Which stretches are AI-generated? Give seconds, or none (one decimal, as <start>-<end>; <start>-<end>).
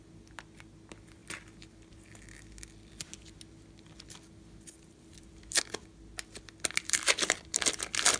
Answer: none